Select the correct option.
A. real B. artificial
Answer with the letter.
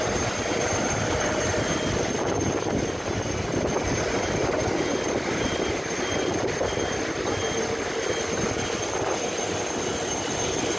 A